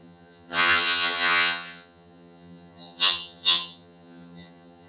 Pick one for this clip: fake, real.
fake